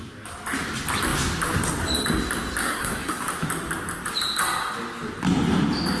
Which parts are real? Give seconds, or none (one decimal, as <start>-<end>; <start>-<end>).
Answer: 0.0-2.6; 3.2-6.0